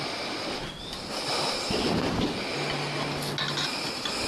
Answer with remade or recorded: recorded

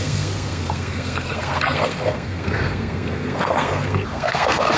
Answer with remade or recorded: remade